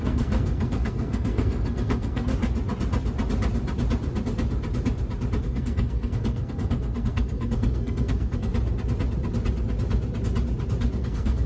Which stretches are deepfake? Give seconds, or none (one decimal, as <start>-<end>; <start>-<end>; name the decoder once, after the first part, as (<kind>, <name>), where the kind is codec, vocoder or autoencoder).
0.0-2.3 (codec, SNAC); 5.4-8.5; 11.0-11.5